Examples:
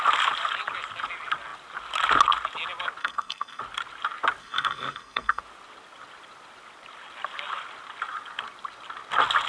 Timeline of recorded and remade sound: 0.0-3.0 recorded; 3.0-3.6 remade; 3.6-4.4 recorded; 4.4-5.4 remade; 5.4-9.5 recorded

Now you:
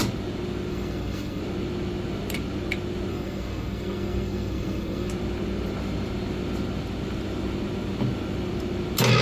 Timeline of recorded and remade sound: 0.0-0.7 recorded; 0.7-1.4 remade; 1.4-3.1 recorded; 3.1-5.1 remade; 5.1-9.2 recorded

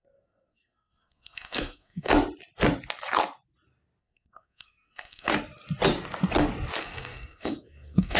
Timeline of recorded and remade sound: 0.0-2.1 remade; 2.1-4.0 recorded; 4.0-5.3 remade; 5.3-6.8 recorded; 6.8-8.2 remade

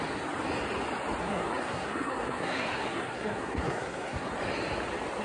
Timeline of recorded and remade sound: 0.0-1.2 recorded; 1.2-4.3 remade; 4.3-5.2 recorded

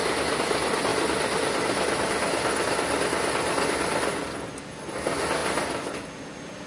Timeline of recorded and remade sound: 0.0-6.7 recorded

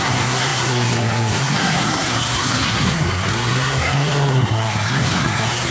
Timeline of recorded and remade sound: 0.0-5.7 remade